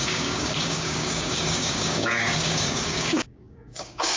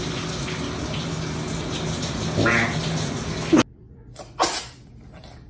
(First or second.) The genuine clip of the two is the second